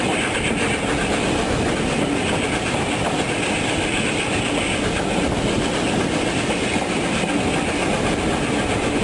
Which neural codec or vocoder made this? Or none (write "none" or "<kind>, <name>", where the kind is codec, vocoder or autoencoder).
none